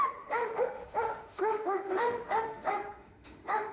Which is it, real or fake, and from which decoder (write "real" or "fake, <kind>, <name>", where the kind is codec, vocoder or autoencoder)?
fake, autoencoder, DAC-VAE